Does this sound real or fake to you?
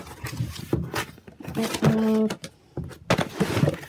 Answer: real